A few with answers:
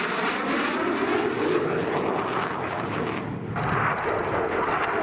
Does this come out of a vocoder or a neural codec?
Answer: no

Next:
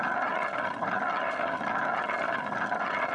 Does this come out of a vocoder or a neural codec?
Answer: no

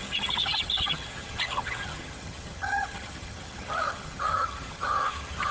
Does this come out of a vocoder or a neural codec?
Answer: yes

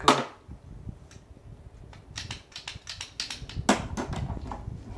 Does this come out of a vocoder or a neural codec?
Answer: no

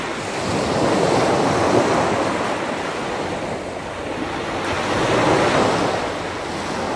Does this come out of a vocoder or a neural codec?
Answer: no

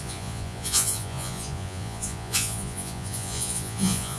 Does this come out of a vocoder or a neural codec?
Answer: yes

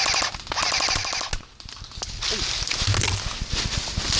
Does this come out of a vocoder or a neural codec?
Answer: no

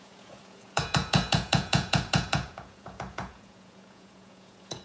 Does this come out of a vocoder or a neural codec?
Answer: yes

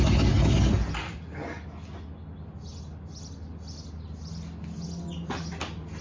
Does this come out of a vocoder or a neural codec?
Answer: no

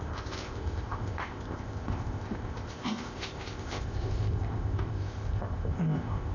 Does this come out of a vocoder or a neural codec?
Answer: yes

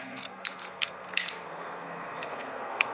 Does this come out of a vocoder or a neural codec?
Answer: yes